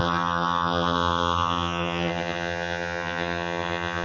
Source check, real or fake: fake